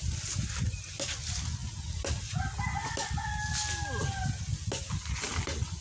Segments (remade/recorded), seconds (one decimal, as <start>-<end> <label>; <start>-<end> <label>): 0.0-5.8 recorded